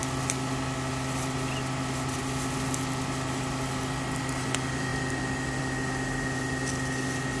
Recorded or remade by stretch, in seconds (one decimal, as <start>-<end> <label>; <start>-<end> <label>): 0.0-7.4 recorded